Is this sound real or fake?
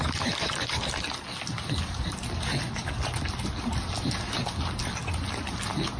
real